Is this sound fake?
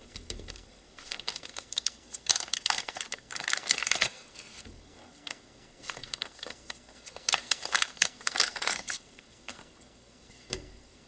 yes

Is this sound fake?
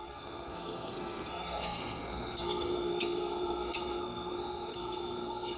yes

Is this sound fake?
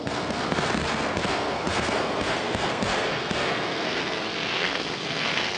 yes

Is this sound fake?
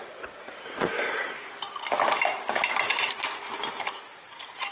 no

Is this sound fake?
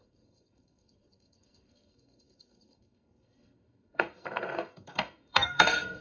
yes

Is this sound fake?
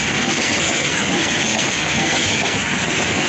yes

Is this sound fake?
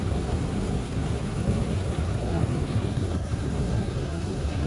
yes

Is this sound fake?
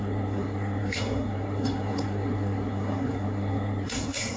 yes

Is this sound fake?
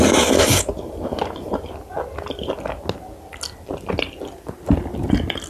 no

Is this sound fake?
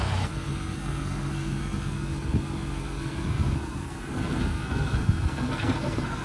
yes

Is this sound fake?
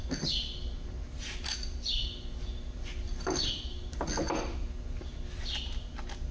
no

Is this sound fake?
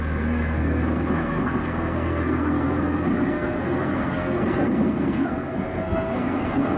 yes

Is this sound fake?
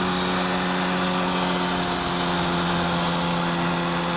no